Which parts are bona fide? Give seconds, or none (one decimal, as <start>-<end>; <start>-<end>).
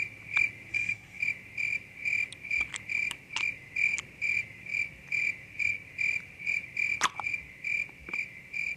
0.0-0.7; 1.2-8.8